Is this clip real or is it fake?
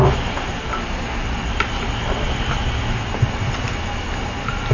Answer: real